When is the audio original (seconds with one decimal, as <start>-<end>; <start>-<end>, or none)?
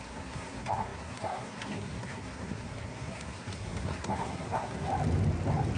4.9-5.8